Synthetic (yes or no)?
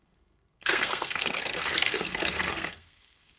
yes